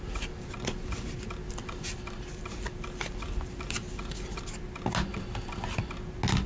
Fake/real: real